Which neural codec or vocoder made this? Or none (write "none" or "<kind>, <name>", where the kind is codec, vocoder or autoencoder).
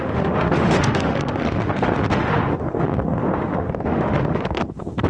autoencoder, DAC-VAE